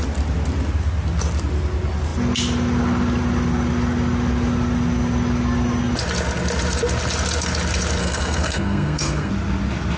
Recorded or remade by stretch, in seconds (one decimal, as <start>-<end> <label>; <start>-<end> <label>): 0.0-8.0 recorded; 8.0-9.3 remade; 9.3-10.0 recorded